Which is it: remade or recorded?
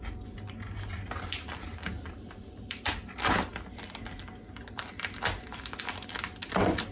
recorded